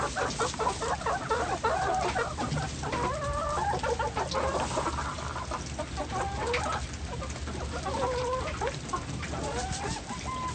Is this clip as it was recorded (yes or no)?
yes